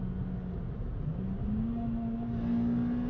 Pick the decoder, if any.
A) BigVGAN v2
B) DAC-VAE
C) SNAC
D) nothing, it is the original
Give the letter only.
D